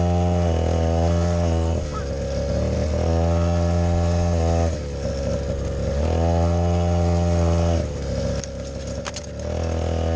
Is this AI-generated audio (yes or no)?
no